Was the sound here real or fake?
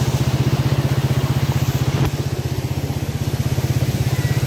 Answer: real